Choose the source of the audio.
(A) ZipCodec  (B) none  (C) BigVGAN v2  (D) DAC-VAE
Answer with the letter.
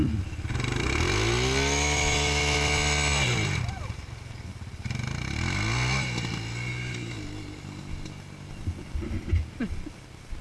B